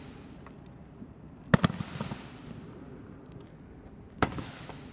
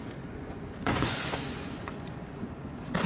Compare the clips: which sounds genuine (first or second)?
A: first